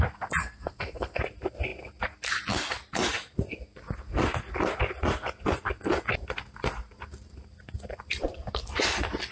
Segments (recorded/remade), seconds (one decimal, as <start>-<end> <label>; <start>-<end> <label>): 0.0-0.4 recorded; 0.4-1.2 remade; 1.2-9.3 recorded